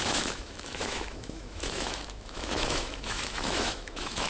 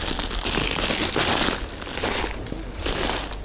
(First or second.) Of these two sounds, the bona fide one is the second